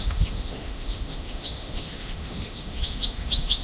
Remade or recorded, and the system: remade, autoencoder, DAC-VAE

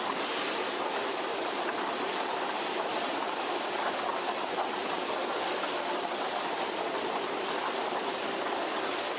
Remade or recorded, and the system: remade, vocoder, BigVGAN v2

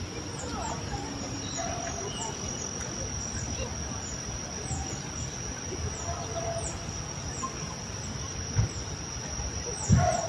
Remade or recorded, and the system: recorded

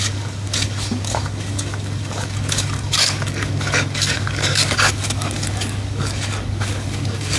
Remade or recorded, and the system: remade, codec, DAC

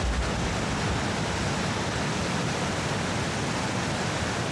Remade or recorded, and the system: recorded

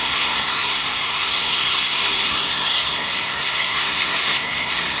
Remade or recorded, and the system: remade, codec, SNAC